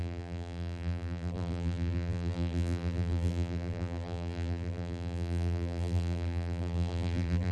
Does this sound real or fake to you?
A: fake